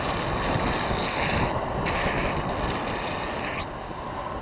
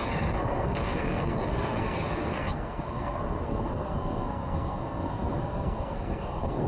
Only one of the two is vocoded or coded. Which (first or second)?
second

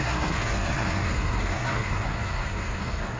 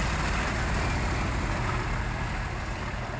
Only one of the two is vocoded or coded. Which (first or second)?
first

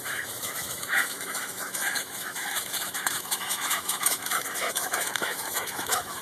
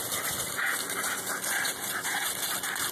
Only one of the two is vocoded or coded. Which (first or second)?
first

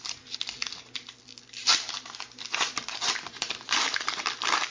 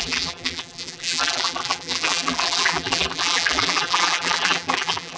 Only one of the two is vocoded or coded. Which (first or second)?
second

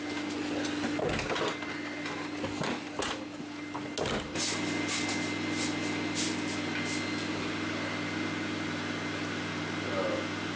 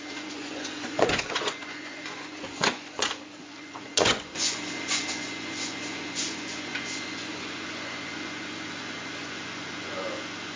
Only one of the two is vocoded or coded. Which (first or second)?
second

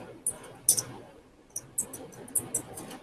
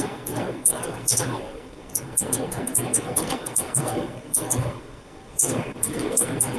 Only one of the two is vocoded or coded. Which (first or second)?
second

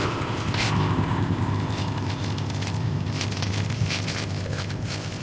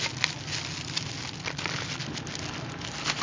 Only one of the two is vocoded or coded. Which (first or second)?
first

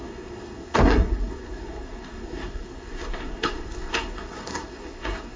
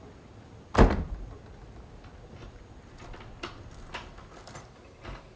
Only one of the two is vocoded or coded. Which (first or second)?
first